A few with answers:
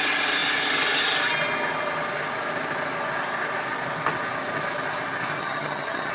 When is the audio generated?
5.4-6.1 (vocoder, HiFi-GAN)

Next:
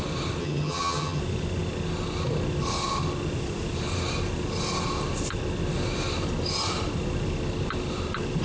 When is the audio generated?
0.4-1.2 (vocoder, HiFi-GAN)

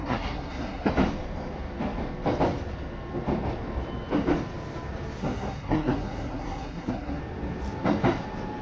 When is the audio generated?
0.0-0.9 (codec, SNAC); 5.2-7.2

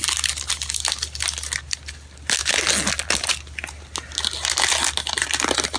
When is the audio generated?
none

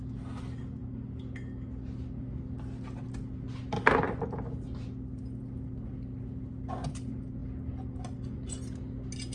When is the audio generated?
none

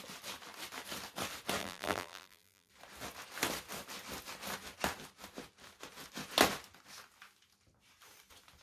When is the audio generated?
1.6-2.7 (vocoder, BigVGAN v2)

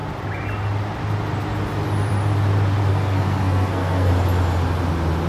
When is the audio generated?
2.9-4.1 (codec, SNAC)